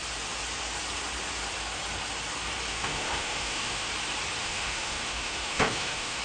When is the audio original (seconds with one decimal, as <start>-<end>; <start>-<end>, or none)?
0.0-2.7; 3.9-4.4